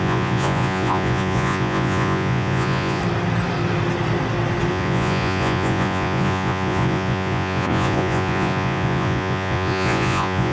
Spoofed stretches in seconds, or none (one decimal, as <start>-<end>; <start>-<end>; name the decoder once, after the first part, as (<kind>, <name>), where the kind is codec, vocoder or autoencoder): 0.0-3.0 (vocoder, Vocos); 4.7-10.5